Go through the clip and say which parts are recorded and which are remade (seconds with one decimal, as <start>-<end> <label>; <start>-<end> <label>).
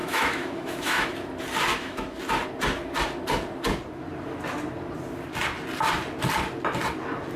0.0-1.1 remade; 1.1-1.7 recorded; 1.7-2.2 remade; 2.2-7.4 recorded